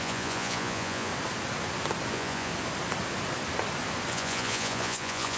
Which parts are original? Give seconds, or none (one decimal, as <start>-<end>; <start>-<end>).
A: 1.1-2.1; 2.5-4.1